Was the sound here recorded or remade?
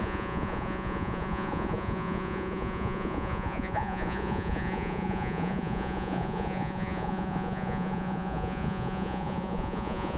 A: remade